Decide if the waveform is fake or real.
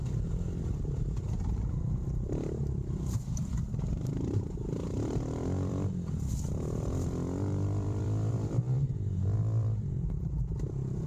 fake